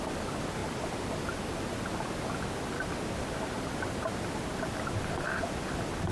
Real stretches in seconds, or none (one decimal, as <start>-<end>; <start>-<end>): 0.0-6.1